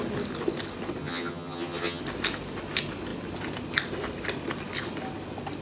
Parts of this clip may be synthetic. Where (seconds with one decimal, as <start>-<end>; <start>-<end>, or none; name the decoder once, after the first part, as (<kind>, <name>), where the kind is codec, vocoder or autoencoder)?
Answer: 1.0-2.0 (vocoder, HiFi-GAN)